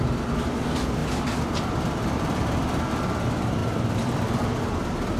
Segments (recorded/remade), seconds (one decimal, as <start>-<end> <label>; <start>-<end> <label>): 0.0-5.2 remade

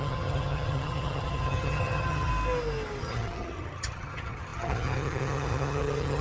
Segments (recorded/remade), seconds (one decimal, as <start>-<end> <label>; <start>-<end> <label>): 0.0-2.3 remade; 2.3-3.0 recorded; 3.0-6.2 remade

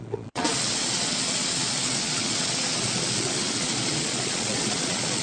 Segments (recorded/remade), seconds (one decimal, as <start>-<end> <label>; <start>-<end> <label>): 0.0-5.2 remade

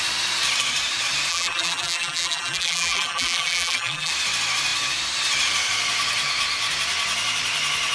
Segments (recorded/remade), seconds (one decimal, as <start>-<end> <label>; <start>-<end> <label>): 0.0-1.3 recorded; 1.3-4.1 remade; 4.1-7.9 recorded